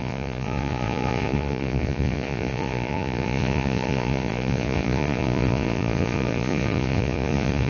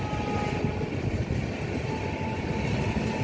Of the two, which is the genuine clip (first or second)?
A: second